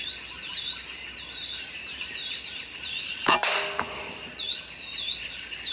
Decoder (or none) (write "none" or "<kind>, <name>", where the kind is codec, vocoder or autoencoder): none